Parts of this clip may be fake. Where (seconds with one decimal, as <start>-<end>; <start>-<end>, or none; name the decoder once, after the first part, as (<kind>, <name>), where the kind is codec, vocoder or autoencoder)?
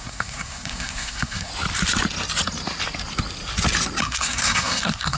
0.0-1.5 (codec, SNAC); 4.0-5.2